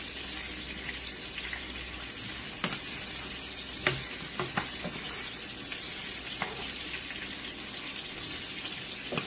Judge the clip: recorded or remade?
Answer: recorded